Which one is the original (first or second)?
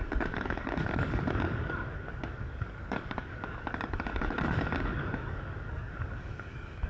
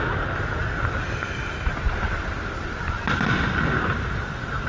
second